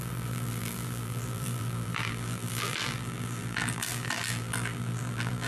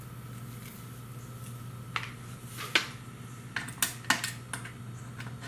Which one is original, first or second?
second